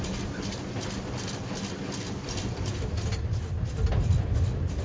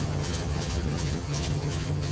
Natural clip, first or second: first